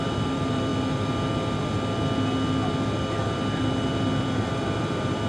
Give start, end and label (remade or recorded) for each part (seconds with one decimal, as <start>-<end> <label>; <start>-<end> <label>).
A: 0.0-0.7 remade; 0.7-3.9 recorded; 3.9-5.3 remade